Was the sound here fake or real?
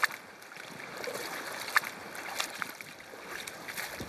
real